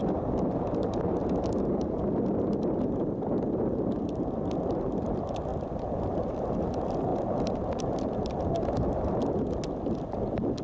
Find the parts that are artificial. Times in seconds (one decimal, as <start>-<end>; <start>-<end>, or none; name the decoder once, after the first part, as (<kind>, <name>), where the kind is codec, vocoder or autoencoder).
none